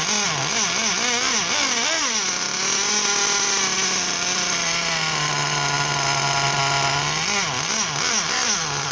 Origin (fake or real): real